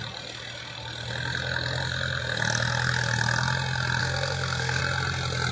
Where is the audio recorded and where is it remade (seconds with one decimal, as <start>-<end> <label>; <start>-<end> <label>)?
0.0-4.0 recorded; 4.0-4.8 remade; 4.8-5.5 recorded

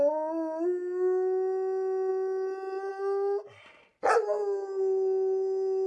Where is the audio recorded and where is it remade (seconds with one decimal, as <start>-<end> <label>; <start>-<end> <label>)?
0.0-5.9 recorded